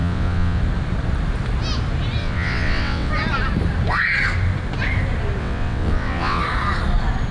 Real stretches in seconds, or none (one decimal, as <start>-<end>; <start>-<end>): 0.6-2.2; 3.1-5.4; 6.4-7.3